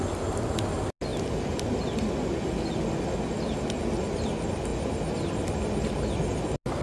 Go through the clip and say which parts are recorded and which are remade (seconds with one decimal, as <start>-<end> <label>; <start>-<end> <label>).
0.0-4.7 recorded; 4.7-5.3 remade; 5.3-6.8 recorded